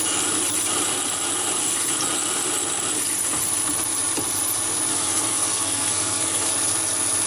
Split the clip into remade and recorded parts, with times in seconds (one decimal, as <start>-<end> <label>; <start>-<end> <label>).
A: 0.0-4.9 recorded; 4.9-6.5 remade; 6.5-7.3 recorded